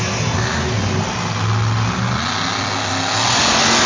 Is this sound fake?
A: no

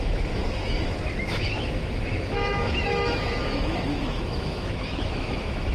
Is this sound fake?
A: yes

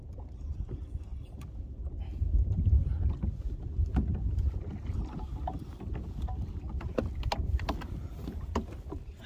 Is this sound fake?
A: no